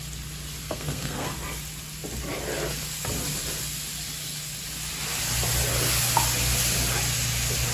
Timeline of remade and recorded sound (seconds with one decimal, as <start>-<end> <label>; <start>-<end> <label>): 0.0-0.6 recorded; 0.6-1.3 remade; 1.3-7.7 recorded